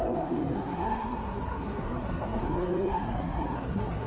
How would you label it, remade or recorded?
remade